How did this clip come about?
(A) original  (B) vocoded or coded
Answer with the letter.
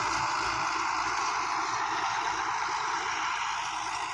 A